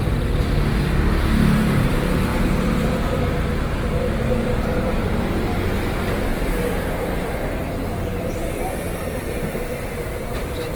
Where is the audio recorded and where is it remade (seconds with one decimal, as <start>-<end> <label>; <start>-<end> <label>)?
0.0-6.3 recorded; 6.3-7.7 remade; 7.7-10.8 recorded